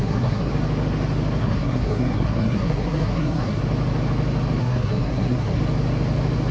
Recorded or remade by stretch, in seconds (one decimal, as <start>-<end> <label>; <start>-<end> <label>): 0.0-0.5 remade; 0.5-1.4 recorded; 1.4-3.6 remade; 3.6-4.6 recorded; 4.6-5.6 remade; 5.6-6.5 recorded